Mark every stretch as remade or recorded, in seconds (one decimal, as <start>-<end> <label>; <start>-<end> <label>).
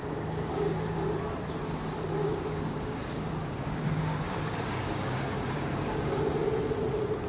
0.0-0.5 recorded; 0.5-1.1 remade; 1.1-2.2 recorded; 2.2-6.1 remade; 6.1-7.3 recorded